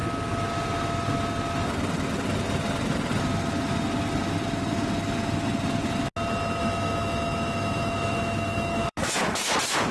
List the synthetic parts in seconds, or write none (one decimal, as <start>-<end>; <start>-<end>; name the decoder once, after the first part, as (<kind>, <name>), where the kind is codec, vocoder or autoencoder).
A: 6.6-9.5 (autoencoder, DAC-VAE)

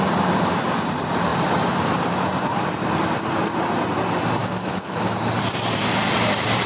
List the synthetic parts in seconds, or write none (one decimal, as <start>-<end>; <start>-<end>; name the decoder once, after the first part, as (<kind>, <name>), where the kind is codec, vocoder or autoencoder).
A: 4.4-5.2 (autoencoder, DAC-VAE)